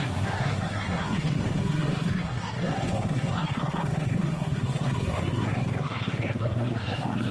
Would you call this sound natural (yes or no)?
no